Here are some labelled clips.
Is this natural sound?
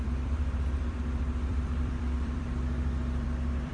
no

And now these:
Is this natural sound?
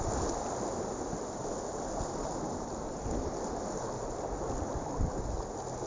yes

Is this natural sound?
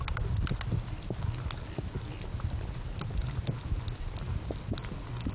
yes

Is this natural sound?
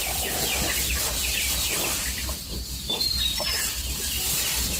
no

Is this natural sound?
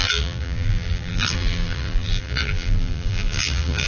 no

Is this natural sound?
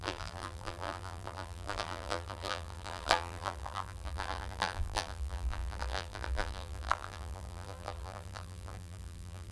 no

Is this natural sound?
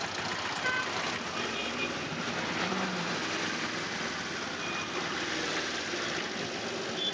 no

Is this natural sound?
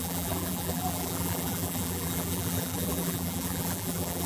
no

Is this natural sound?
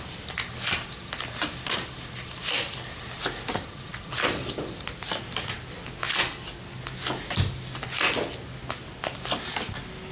yes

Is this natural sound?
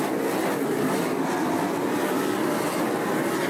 yes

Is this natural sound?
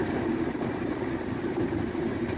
no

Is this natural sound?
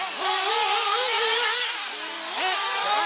yes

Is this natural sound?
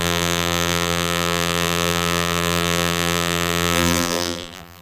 no